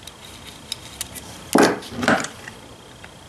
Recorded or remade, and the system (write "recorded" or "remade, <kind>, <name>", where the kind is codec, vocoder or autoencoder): recorded